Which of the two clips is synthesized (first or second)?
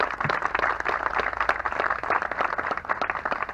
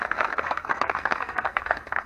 second